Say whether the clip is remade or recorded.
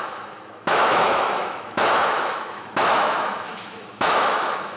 remade